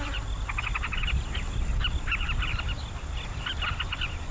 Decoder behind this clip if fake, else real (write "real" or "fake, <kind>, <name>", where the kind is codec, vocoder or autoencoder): real